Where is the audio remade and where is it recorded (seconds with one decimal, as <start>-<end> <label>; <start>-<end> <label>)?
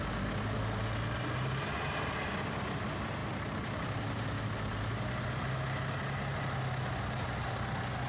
0.0-8.1 recorded